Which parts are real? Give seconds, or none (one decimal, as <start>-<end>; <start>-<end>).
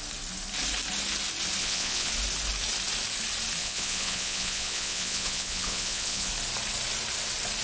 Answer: 0.0-1.6; 2.1-3.6; 6.3-7.6